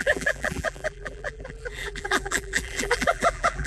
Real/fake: fake